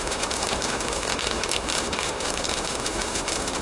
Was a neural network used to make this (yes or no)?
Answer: yes